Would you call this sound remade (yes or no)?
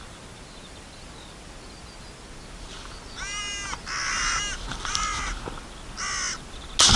no